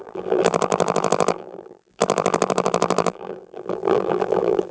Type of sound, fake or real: fake